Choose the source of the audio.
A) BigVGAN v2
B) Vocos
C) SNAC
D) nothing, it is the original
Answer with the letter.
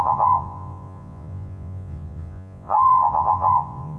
B